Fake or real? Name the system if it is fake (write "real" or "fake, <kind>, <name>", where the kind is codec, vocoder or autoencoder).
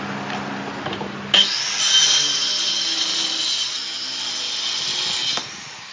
real